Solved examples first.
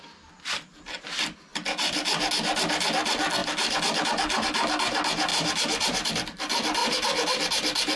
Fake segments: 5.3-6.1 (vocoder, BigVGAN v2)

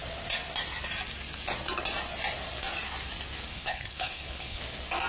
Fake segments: 3.5-4.6 (codec, HILCodec)

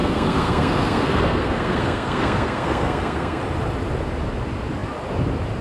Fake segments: 0.0-3.4 (codec, SNAC)

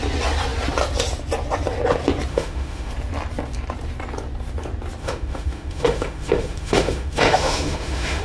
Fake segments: 2.3-2.9 (autoencoder, DAC-VAE); 5.0-8.2

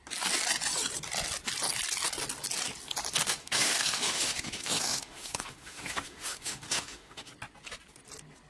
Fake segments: 3.2-7.3 (autoencoder, DAC-VAE)

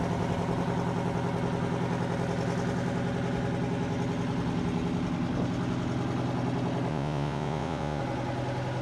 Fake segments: 6.9-8.0 (vocoder, Vocos)